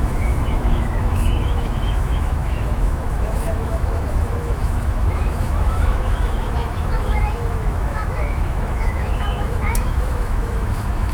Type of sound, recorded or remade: remade